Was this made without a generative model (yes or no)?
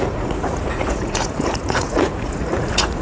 no